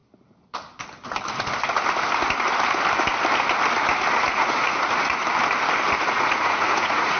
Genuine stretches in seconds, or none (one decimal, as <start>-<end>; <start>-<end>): 0.0-4.3; 5.2-5.9